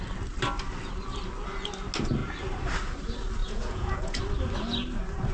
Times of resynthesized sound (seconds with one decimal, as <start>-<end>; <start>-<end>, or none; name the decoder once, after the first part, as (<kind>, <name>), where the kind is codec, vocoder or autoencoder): 3.4-4.2 (vocoder, Vocos)